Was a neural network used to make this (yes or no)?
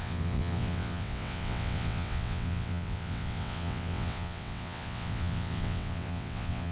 yes